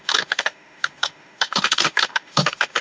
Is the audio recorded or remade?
remade